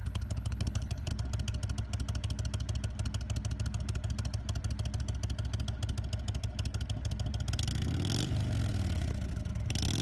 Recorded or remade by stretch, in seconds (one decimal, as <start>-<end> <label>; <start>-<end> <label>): 0.0-1.1 remade; 1.1-10.0 recorded